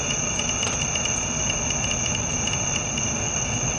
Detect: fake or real real